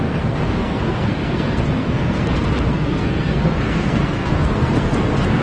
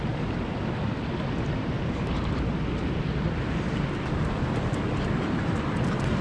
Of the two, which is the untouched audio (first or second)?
second